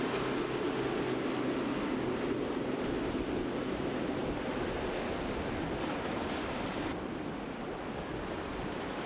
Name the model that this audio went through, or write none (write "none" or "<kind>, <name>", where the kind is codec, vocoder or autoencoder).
none